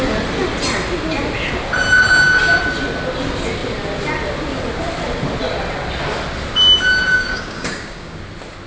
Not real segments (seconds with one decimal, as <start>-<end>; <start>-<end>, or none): 7.1-8.2